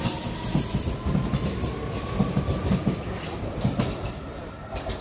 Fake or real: real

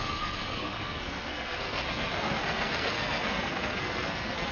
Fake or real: fake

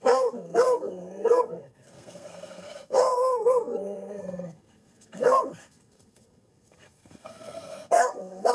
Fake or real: fake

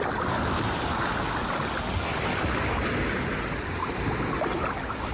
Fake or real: real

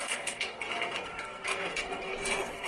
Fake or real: fake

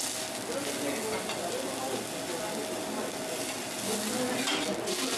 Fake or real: real